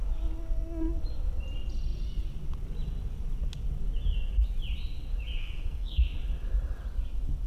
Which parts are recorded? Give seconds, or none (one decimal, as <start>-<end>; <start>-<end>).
0.0-5.4; 6.0-7.5